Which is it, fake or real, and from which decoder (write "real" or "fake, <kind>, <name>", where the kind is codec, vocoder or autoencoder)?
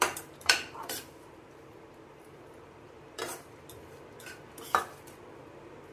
fake, vocoder, BigVGAN v2